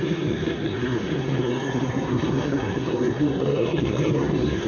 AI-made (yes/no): yes